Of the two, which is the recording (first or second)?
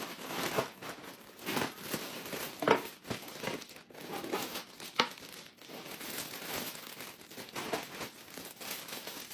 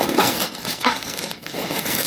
first